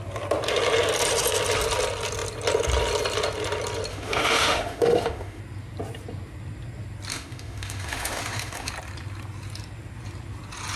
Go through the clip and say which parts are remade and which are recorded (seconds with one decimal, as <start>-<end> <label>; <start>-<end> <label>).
0.0-3.9 recorded; 3.9-5.4 remade; 5.4-7.1 recorded; 7.1-8.7 remade; 8.7-10.8 recorded